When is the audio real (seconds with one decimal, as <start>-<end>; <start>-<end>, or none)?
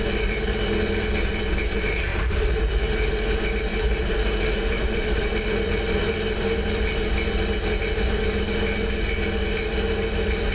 0.0-2.1; 2.6-3.7; 6.7-10.5